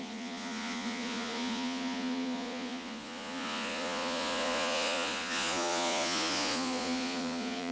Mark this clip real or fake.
fake